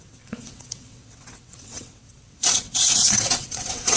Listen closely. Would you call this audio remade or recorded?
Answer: remade